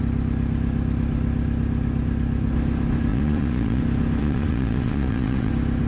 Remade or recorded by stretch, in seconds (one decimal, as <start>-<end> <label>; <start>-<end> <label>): 0.0-3.1 recorded; 3.1-3.8 remade; 3.8-4.2 recorded; 4.2-5.5 remade; 5.5-5.9 recorded

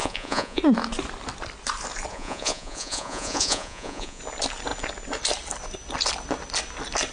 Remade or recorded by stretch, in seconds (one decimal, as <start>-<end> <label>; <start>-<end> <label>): 0.0-0.6 remade; 0.6-2.1 recorded; 2.1-4.2 remade; 4.2-7.1 recorded

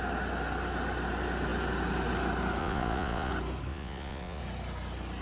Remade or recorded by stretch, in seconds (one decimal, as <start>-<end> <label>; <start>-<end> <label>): 0.0-2.6 recorded; 2.6-3.3 remade; 3.3-3.7 recorded; 3.7-4.4 remade; 4.4-5.2 recorded

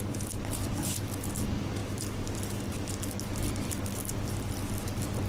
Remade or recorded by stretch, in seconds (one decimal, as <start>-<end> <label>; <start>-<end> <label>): 0.0-5.3 recorded

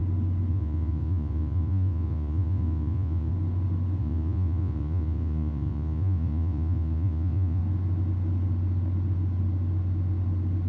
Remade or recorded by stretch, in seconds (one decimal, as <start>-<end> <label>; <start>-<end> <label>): 0.0-0.5 recorded; 0.5-3.3 remade; 3.3-4.0 recorded; 4.0-7.6 remade; 7.6-10.7 recorded